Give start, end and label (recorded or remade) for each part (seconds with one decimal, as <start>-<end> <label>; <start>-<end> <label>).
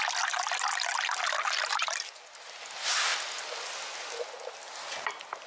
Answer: 0.0-5.5 recorded